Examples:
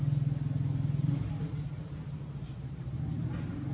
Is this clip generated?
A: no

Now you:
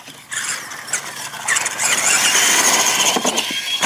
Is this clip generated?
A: no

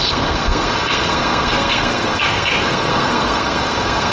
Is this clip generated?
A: yes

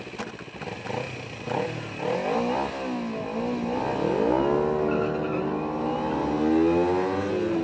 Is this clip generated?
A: no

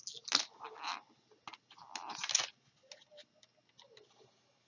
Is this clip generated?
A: no